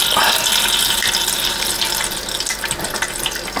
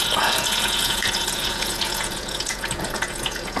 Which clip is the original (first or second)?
first